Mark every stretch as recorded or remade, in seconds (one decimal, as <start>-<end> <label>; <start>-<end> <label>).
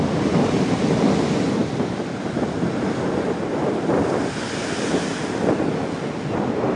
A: 0.0-6.8 recorded